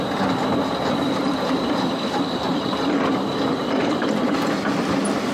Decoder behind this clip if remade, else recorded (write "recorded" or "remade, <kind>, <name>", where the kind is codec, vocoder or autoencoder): remade, vocoder, BigVGAN v2